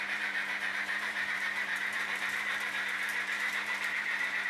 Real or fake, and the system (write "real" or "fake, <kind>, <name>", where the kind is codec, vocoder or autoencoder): fake, vocoder, BigVGAN v2